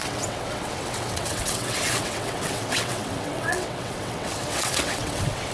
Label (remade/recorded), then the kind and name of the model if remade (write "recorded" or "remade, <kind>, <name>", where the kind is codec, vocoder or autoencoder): remade, vocoder, WaveNeXt